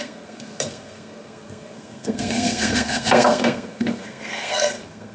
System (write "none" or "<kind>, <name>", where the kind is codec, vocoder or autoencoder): codec, SNAC